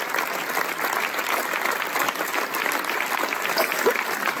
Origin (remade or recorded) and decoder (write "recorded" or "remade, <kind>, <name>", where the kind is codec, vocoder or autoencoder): recorded